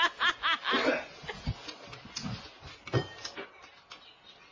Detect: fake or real real